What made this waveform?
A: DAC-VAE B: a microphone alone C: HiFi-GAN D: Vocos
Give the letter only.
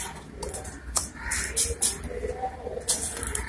B